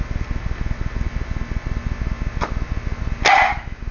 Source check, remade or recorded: recorded